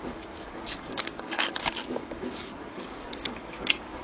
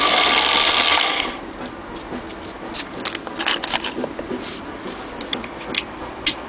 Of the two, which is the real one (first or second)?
second